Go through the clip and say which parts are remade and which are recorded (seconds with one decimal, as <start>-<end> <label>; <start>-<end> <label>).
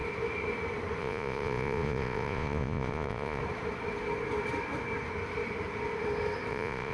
0.0-1.0 recorded; 1.0-3.4 remade; 3.4-6.5 recorded; 6.5-6.9 remade